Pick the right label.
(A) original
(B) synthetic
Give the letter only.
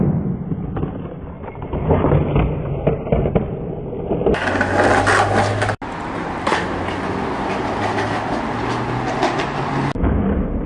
A